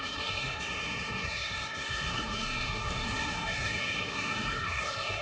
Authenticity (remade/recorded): remade